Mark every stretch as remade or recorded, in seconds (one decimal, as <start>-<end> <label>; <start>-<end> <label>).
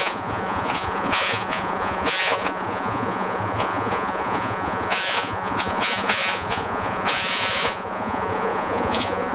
0.0-9.3 remade